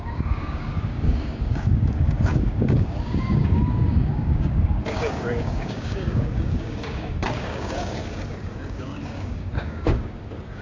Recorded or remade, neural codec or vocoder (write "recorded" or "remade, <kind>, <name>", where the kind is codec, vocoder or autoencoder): remade, codec, DAC